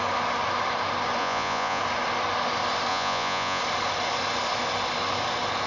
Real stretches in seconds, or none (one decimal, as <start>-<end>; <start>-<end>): 0.0-1.2; 1.8-2.9; 3.6-5.7